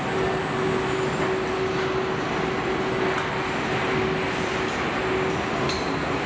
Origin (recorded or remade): recorded